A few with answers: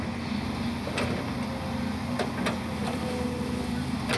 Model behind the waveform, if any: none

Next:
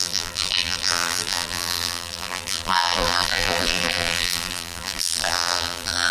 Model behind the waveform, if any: vocoder, BigVGAN v2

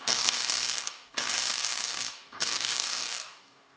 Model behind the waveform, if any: codec, DAC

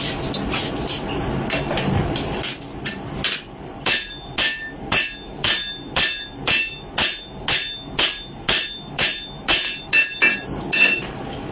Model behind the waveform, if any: none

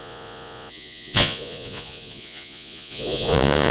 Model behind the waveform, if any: vocoder, Vocos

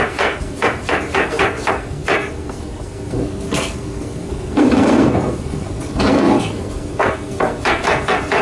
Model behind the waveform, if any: codec, SNAC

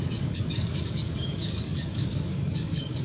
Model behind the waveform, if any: codec, DAC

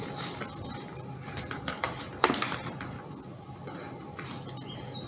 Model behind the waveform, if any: none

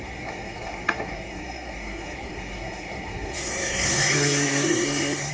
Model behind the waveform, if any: codec, SNAC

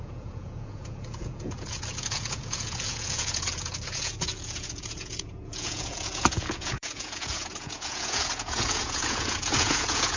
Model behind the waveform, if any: vocoder, Vocos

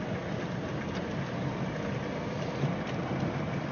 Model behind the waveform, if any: none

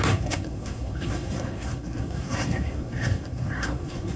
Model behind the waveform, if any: codec, SNAC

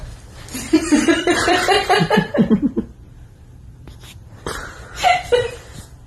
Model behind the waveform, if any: vocoder, BigVGAN v2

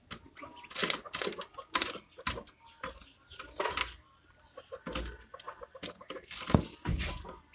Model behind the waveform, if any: none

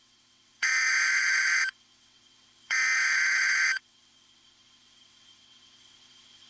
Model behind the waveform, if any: vocoder, WaveNeXt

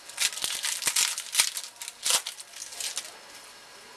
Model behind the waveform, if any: none